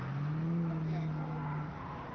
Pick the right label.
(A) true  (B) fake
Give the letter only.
A